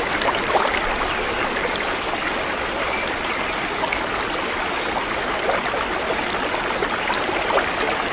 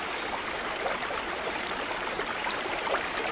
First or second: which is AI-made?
second